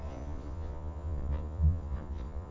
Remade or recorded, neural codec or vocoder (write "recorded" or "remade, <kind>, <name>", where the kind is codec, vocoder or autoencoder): remade, vocoder, Vocos